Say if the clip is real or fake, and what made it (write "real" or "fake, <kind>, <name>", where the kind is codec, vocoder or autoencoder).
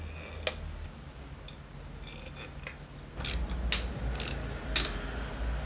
real